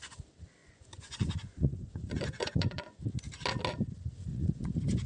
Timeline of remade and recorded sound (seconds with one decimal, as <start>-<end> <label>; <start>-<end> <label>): 0.0-0.6 recorded; 0.6-3.0 remade; 3.0-4.3 recorded; 4.3-5.1 remade